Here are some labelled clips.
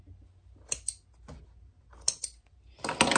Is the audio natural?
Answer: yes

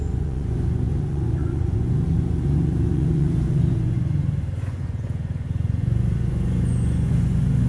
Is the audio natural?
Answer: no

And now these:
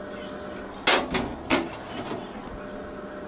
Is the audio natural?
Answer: yes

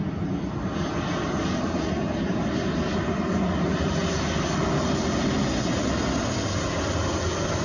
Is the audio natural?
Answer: yes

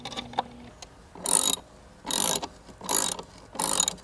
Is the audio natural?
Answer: yes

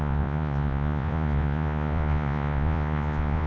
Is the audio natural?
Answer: no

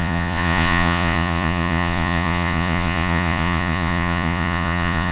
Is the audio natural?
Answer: no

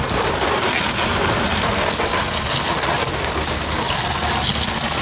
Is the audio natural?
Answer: yes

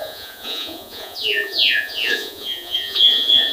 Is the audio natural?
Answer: no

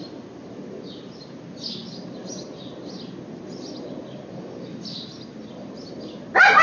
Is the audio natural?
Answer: yes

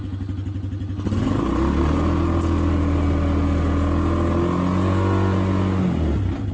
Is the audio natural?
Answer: yes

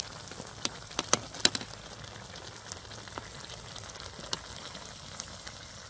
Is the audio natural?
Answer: yes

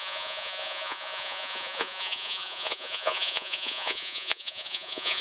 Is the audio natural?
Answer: no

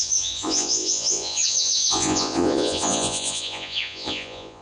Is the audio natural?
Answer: no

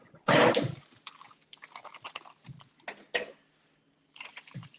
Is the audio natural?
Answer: yes